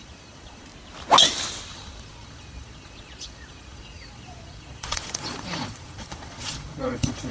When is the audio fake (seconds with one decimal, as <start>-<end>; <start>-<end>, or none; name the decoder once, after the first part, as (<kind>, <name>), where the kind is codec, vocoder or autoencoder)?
0.0-0.7 (vocoder, Vocos); 1.7-7.3